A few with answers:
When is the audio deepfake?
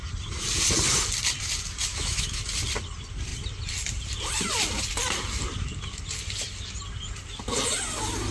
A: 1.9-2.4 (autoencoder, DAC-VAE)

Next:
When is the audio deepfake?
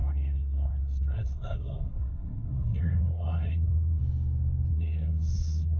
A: 0.0-4.0 (codec, SNAC); 4.7-5.8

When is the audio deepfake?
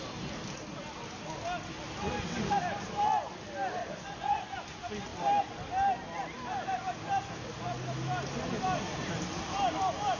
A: 3.8-4.5 (vocoder, Vocos)